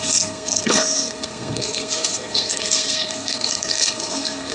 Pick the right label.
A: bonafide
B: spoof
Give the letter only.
B